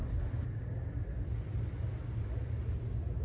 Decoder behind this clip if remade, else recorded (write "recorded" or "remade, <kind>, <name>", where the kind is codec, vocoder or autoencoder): recorded